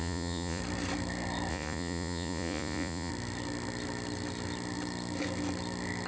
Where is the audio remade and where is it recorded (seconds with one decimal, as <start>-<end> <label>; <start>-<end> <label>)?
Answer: 0.0-0.6 remade; 0.6-1.5 recorded; 1.5-3.1 remade; 3.1-6.1 recorded

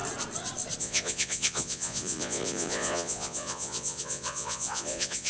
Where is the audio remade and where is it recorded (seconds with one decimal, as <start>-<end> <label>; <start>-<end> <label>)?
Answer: 0.0-0.8 recorded; 0.8-5.3 remade

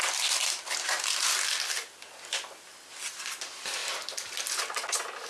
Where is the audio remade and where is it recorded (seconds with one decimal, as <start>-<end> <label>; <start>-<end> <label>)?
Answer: 0.0-5.3 recorded